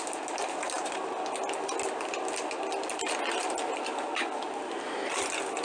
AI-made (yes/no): no